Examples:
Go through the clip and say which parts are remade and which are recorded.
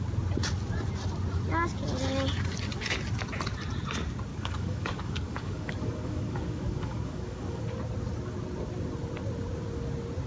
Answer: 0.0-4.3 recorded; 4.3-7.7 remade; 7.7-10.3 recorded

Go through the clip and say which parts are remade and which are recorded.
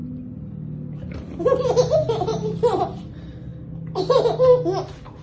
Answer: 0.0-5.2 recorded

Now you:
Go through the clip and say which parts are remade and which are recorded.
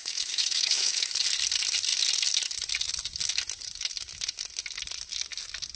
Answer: 0.0-1.2 remade; 1.2-5.8 recorded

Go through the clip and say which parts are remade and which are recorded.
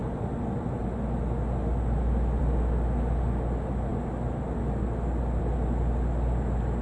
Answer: 0.0-6.8 recorded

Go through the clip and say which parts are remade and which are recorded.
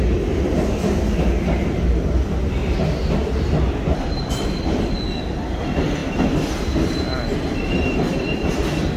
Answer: 0.0-9.0 recorded